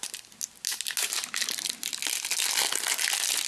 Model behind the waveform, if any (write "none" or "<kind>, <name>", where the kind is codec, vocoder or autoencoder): none